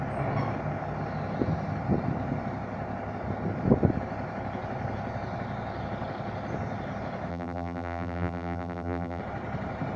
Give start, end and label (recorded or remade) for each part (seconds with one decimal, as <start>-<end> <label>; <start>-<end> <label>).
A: 0.0-7.3 recorded; 7.3-9.2 remade; 9.2-10.0 recorded